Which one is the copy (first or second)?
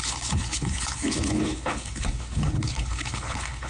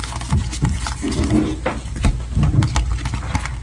first